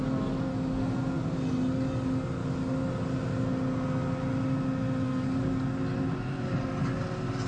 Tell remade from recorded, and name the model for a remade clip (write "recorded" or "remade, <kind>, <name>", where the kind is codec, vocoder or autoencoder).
recorded